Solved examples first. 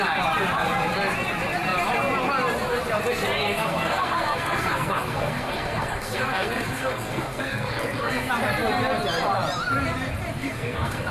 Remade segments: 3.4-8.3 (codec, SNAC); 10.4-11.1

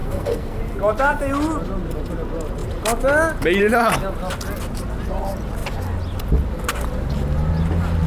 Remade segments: 0.0-0.6 (codec, SNAC)

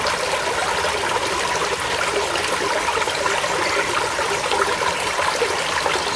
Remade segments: none

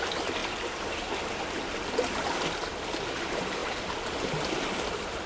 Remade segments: none

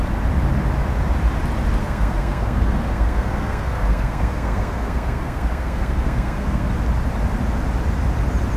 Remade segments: 1.8-6.7 (codec, SNAC)

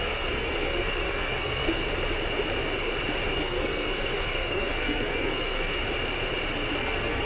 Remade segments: 0.0-1.8 (codec, SNAC); 3.3-5.8; 6.8-7.3